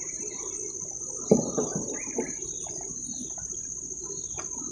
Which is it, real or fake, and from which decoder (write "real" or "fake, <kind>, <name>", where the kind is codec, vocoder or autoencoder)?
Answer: real